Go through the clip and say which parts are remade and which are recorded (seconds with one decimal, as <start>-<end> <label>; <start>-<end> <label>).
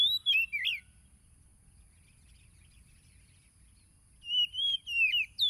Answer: 0.0-5.5 recorded